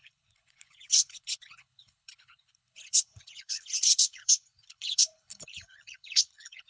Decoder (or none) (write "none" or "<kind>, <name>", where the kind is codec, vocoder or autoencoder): codec, HILCodec